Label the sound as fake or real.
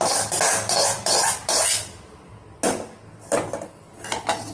real